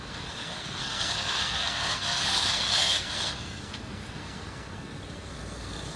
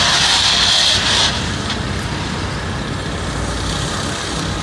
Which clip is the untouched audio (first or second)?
second